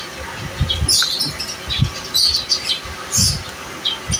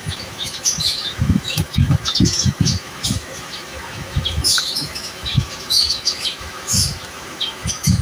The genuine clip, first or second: first